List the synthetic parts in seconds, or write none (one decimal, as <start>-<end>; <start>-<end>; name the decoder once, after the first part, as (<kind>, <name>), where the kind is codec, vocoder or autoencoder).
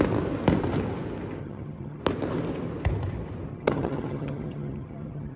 1.4-2.0 (vocoder, HiFi-GAN); 3.5-5.4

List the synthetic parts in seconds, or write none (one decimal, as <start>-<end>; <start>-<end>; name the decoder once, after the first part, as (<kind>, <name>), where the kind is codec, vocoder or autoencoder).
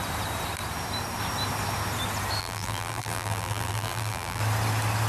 2.4-4.4 (vocoder, BigVGAN v2)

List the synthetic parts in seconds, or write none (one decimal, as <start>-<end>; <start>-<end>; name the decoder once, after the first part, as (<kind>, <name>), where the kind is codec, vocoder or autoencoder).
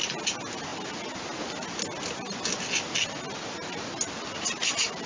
none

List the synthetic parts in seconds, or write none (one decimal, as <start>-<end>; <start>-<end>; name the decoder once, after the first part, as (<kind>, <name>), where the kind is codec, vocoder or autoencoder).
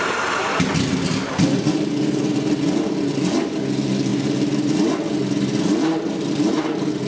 none